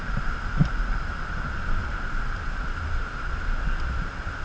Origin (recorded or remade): recorded